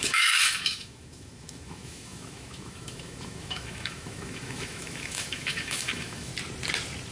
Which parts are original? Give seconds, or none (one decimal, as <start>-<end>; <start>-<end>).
6.3-7.1